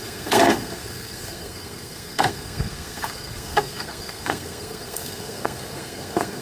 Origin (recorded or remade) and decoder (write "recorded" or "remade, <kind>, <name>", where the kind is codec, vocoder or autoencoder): remade, codec, SNAC